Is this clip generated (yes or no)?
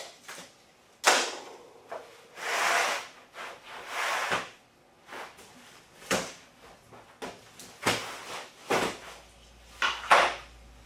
no